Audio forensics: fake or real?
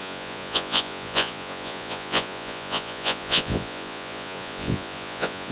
fake